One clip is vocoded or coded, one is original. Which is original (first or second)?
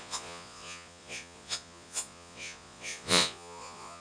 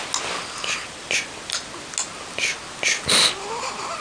second